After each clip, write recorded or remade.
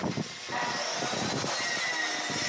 recorded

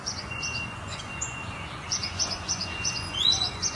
remade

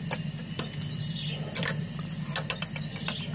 recorded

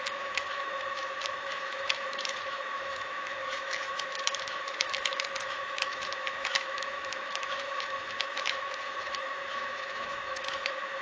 remade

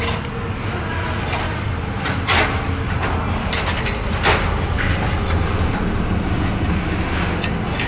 recorded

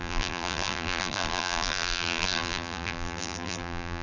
remade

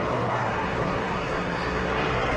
remade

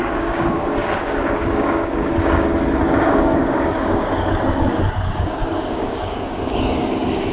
remade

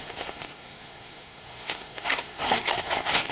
remade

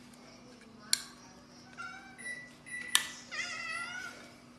recorded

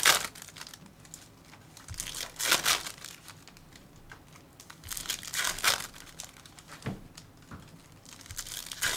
recorded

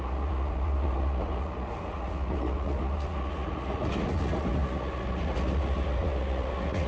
remade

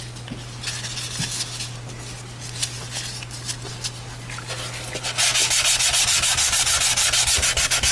recorded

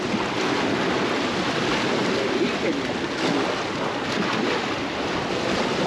recorded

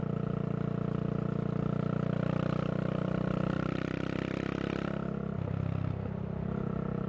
recorded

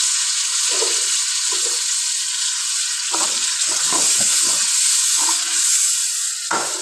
remade